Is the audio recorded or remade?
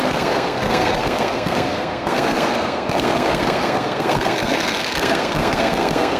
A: remade